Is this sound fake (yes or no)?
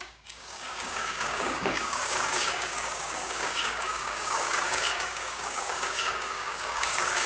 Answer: yes